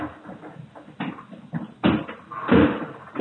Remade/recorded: recorded